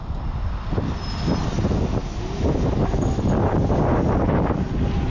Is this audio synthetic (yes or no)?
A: no